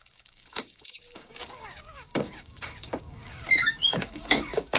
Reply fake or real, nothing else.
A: fake